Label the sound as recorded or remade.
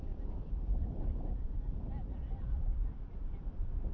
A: remade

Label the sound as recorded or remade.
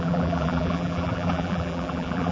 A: remade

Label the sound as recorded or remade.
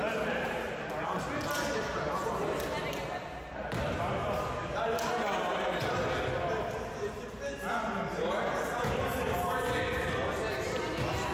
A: recorded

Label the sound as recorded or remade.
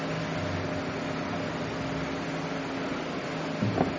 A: recorded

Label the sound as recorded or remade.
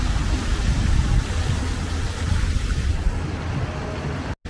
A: recorded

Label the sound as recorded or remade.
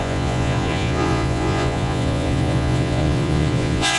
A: remade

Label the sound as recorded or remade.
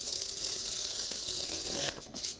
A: remade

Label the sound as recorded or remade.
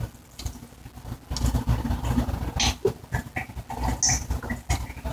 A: recorded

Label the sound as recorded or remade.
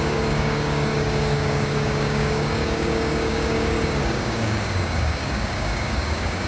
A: remade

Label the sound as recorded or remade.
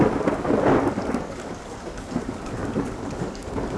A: remade